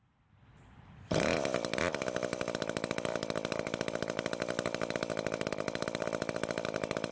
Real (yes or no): yes